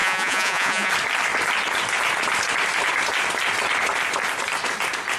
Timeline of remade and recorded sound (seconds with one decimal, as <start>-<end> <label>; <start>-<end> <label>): 0.0-0.9 remade; 0.9-5.2 recorded

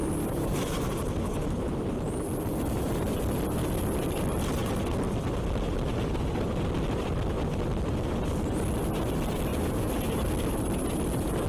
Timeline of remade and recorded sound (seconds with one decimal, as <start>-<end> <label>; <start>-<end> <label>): 0.0-0.9 remade; 0.9-5.9 recorded; 5.9-6.5 remade; 6.5-9.5 recorded; 9.5-10.3 remade; 10.3-11.5 recorded

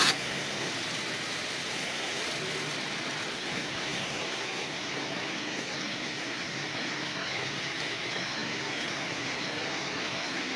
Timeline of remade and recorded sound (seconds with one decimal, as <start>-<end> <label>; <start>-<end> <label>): 0.0-0.7 remade; 0.7-1.7 recorded; 1.7-2.2 remade; 2.2-3.3 recorded; 3.3-10.6 remade

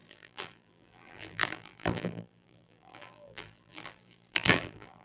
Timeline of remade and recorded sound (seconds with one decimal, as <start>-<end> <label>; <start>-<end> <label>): 0.0-5.0 remade